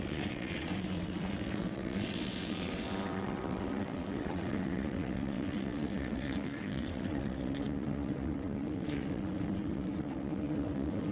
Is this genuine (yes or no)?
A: no